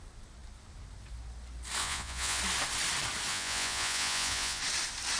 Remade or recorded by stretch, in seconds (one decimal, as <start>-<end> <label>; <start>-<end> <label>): 0.0-1.8 recorded; 1.8-2.4 remade; 2.4-3.3 recorded; 3.3-4.6 remade; 4.6-5.2 recorded